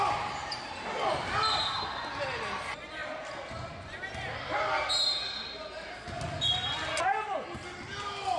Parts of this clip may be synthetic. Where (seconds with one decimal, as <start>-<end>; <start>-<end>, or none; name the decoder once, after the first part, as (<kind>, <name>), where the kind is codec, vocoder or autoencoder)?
none